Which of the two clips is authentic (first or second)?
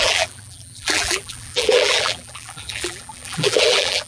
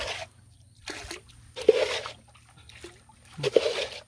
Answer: second